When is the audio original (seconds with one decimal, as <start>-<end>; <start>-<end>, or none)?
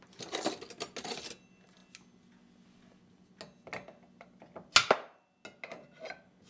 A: 0.0-6.5